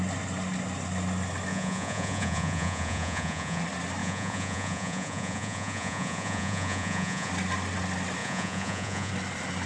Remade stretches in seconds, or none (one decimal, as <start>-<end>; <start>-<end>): 1.5-3.6; 4.0-7.3; 8.2-9.1